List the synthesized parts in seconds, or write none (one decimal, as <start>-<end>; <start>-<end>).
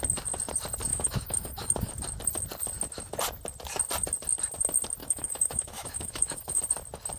0.9-1.9; 5.0-6.6